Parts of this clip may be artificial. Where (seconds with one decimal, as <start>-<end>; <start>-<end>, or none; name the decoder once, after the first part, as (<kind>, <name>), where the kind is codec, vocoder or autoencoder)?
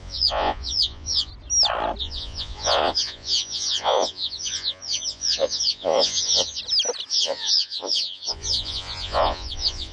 0.0-1.3 (vocoder, Vocos); 2.0-6.6; 7.1-9.9